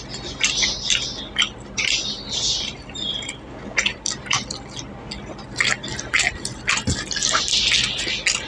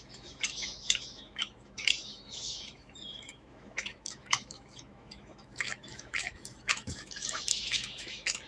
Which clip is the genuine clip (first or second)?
first